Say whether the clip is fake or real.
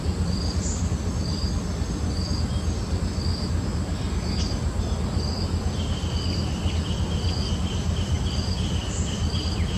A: real